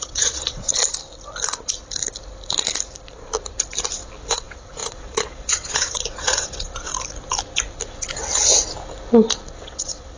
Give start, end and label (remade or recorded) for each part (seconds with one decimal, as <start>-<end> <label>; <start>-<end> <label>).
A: 0.0-0.7 remade; 0.7-4.3 recorded; 4.3-6.9 remade; 6.9-8.1 recorded; 8.1-8.5 remade; 8.5-9.5 recorded; 9.5-10.2 remade